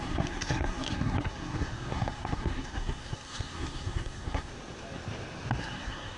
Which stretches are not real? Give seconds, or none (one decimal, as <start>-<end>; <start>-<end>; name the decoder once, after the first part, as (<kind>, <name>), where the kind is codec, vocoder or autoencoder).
0.0-4.5 (codec, SNAC); 5.6-6.2